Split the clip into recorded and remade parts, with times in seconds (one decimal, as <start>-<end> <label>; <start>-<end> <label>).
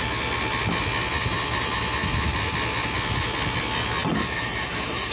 0.0-4.0 recorded; 4.0-5.1 remade